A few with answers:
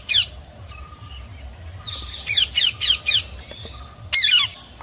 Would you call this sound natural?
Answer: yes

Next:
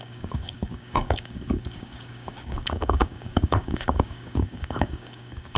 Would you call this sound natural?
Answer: no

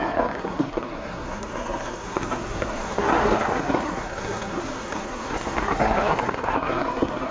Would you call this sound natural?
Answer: no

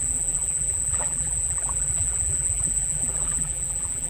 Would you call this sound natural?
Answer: no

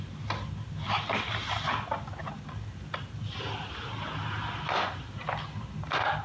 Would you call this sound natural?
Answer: yes